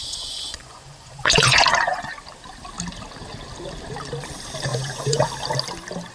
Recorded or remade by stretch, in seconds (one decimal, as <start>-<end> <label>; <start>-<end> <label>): 0.0-2.1 remade; 2.1-4.7 recorded; 4.7-5.3 remade; 5.3-6.1 recorded